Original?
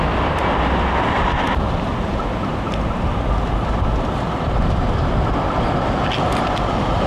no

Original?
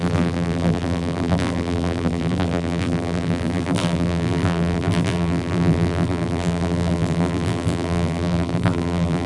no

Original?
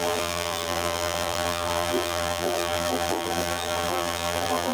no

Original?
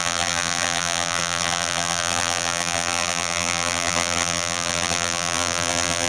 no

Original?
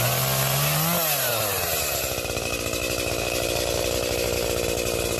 yes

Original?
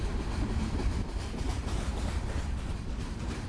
no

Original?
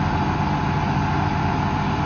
yes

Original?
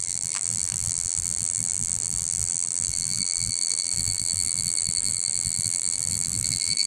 no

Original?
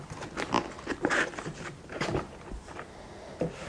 no